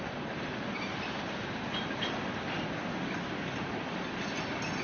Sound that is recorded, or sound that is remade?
recorded